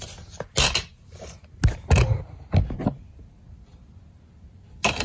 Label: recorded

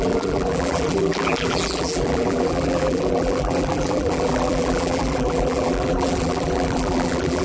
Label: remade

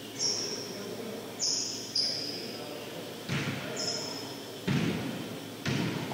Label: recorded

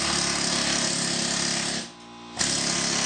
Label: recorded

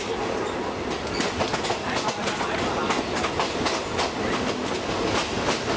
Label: recorded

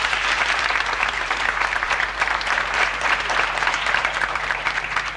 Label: remade